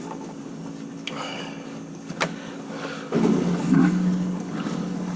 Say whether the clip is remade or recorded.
remade